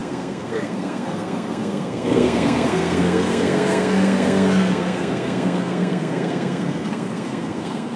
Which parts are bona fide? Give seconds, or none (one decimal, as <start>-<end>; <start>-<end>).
none